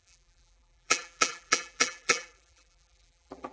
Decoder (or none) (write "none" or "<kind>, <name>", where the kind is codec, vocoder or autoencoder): vocoder, BigVGAN v2